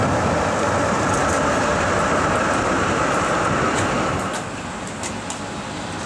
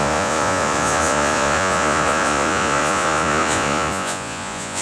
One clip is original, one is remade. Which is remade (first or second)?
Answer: second